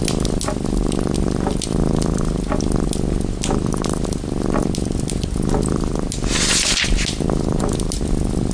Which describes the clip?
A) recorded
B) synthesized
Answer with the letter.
A